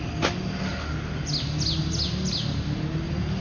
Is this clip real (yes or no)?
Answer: yes